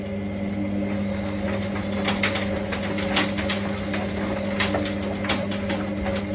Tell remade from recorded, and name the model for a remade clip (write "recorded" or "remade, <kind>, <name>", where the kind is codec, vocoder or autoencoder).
recorded